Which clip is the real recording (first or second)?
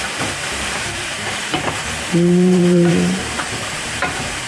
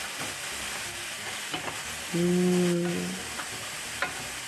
second